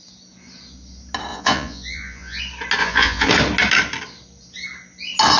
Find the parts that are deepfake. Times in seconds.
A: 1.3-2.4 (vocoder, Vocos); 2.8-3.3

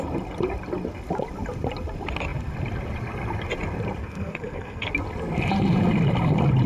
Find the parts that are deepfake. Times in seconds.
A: 4.0-4.9 (codec, SNAC)

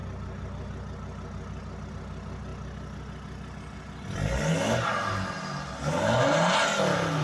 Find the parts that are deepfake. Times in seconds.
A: none

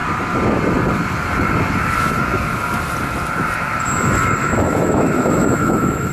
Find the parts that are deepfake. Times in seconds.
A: 4.4-6.1 (autoencoder, DAC-VAE)

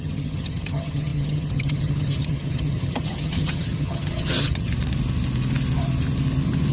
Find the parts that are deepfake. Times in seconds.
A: 0.0-4.7 (vocoder, HiFi-GAN)

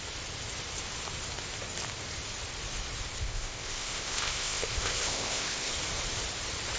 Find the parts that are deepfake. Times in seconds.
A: 3.2-5.7 (codec, ZipCodec)